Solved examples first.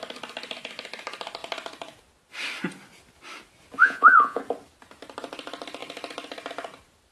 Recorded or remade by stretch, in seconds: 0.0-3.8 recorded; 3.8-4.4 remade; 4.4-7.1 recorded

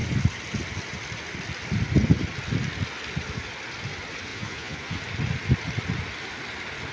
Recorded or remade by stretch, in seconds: 0.0-4.3 recorded; 4.3-5.0 remade; 5.0-6.9 recorded

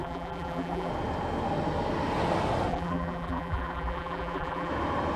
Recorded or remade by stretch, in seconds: 0.0-0.9 remade; 0.9-2.7 recorded; 2.7-4.7 remade; 4.7-5.2 recorded

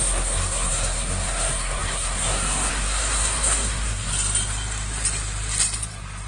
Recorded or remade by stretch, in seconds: 0.0-4.1 remade; 4.1-6.3 recorded

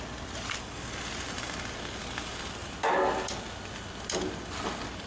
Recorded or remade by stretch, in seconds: 0.0-5.1 recorded

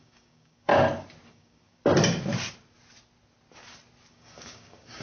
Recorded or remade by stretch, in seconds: 0.0-0.7 remade; 0.7-1.3 recorded; 1.3-1.8 remade; 1.8-4.1 recorded; 4.1-5.0 remade

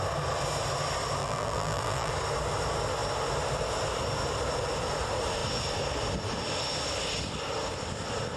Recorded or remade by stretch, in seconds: 0.0-1.2 recorded; 1.2-2.1 remade; 2.1-8.4 recorded